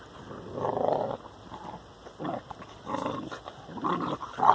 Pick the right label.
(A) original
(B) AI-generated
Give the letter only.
A